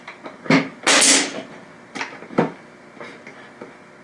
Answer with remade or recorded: recorded